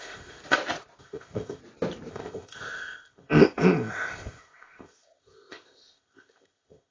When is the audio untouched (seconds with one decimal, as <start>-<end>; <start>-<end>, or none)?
0.4-1.0; 1.6-2.1